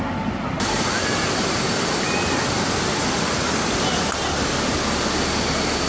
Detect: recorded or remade recorded